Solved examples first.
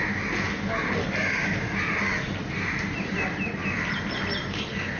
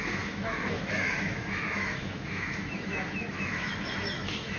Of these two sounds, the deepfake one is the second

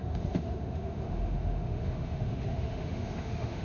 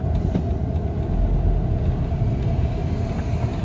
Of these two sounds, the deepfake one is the first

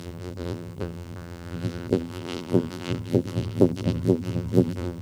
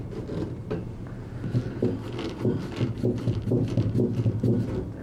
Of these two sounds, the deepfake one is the first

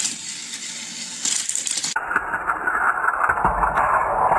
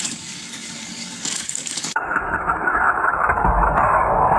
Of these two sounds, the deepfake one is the second